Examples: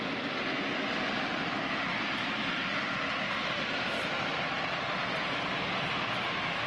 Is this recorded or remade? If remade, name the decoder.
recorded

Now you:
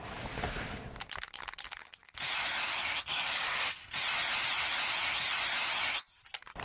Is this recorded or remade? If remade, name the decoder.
recorded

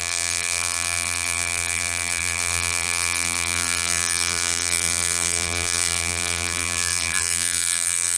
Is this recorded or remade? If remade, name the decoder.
remade, vocoder, BigVGAN v2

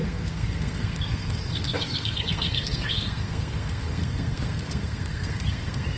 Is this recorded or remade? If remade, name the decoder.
remade, codec, SNAC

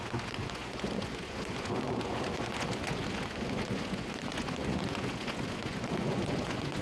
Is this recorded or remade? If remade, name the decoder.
remade, vocoder, Vocos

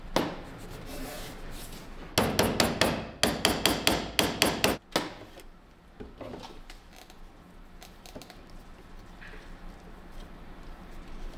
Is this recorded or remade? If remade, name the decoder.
recorded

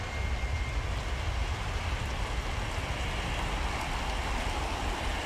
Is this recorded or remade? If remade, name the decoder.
recorded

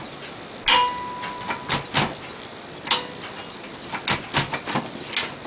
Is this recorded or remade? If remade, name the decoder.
recorded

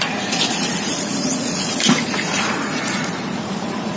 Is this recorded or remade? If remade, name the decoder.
remade, vocoder, Vocos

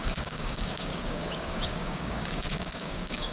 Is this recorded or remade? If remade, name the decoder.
remade, codec, DAC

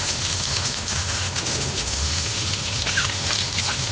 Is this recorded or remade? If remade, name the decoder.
remade, autoencoder, DAC-VAE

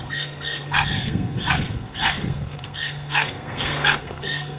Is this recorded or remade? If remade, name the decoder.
remade, codec, SNAC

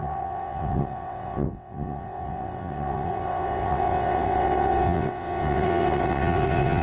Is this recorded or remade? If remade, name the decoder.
remade, vocoder, WaveNeXt